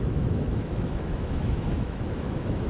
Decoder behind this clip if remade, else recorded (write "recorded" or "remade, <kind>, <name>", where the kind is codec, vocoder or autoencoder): remade, autoencoder, DAC-VAE